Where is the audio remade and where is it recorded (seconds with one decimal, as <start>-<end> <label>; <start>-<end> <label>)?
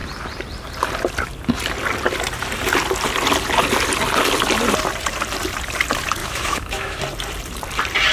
0.0-6.2 recorded; 6.2-7.0 remade; 7.0-8.1 recorded